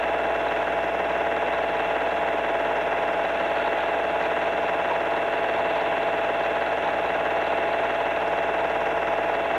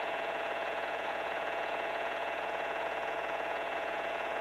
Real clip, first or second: first